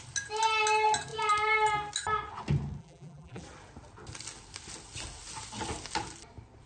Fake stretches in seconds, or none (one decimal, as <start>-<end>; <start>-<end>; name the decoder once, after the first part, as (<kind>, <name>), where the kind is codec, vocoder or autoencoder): 2.8-3.4 (vocoder, BigVGAN v2)